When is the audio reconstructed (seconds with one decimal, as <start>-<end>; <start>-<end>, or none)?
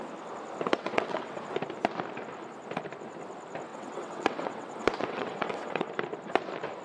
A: 0.7-1.4; 3.7-5.9